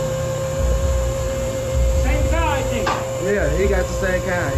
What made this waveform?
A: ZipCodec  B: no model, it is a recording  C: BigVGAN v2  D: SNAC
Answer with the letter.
C